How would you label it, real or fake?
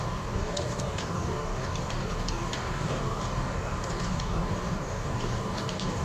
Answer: fake